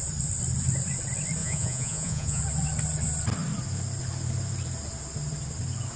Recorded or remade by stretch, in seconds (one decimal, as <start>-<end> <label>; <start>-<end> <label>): 0.0-1.4 recorded; 1.4-2.4 remade; 2.4-6.0 recorded